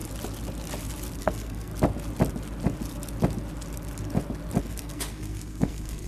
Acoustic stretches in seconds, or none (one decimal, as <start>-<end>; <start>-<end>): 0.0-1.2; 1.7-4.6